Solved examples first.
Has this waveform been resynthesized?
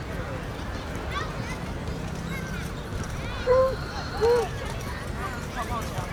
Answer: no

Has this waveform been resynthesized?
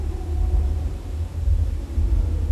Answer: yes